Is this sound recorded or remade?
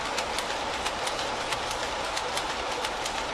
recorded